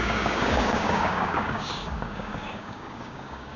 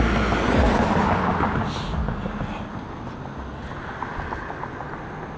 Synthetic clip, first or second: first